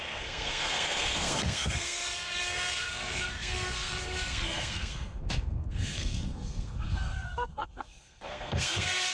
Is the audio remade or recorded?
remade